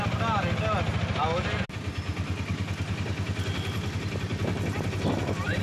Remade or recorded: recorded